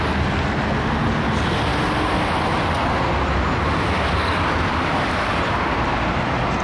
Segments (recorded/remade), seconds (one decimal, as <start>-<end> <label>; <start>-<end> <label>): 0.0-6.6 recorded